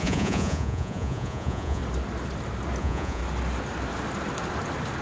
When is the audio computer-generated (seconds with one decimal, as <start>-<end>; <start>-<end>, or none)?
0.0-1.8; 2.8-3.2